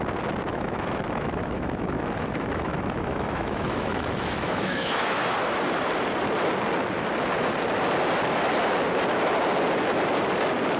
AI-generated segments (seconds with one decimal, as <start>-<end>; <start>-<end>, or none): 0.5-5.2